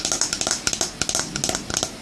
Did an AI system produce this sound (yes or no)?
no